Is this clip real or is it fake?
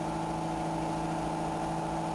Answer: real